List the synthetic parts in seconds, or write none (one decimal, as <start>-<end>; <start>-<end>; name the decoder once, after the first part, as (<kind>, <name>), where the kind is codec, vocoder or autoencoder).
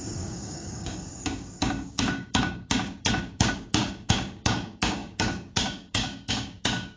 0.0-7.0 (codec, DAC)